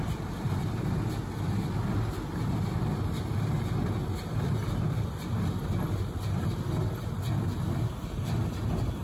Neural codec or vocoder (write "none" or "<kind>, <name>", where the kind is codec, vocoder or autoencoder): none